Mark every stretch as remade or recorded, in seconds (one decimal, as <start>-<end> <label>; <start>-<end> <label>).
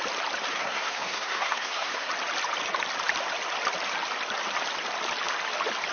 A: 0.0-0.5 recorded; 0.5-2.1 remade; 2.1-5.9 recorded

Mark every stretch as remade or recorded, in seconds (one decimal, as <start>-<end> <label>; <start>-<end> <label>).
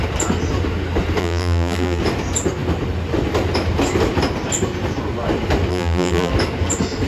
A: 0.0-1.2 recorded; 1.2-2.0 remade; 2.0-5.7 recorded; 5.7-6.3 remade; 6.3-7.1 recorded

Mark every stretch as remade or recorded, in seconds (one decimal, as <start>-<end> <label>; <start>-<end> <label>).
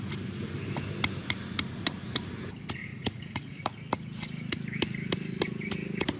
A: 0.0-2.9 recorded; 2.9-3.7 remade; 3.7-6.2 recorded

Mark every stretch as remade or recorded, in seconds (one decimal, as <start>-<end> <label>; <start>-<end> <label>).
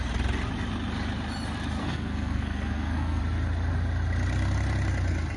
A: 0.0-1.8 recorded; 1.8-3.2 remade; 3.2-5.4 recorded